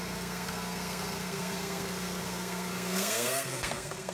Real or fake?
fake